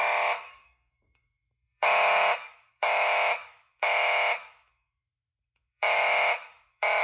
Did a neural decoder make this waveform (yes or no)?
yes